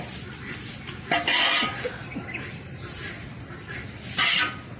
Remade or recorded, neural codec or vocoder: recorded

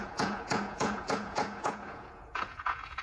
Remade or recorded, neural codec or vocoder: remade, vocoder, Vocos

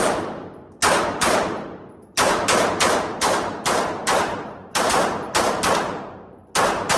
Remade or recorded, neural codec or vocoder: recorded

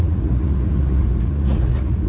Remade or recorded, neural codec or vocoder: remade, vocoder, Vocos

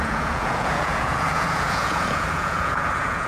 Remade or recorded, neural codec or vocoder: remade, vocoder, Vocos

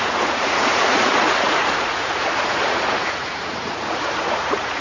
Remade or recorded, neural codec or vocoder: remade, vocoder, Vocos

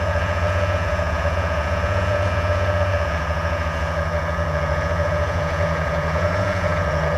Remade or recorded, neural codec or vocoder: remade, vocoder, Vocos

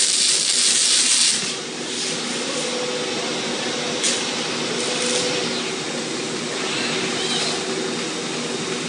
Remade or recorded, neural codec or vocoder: recorded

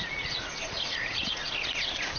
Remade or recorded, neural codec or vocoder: remade, vocoder, Vocos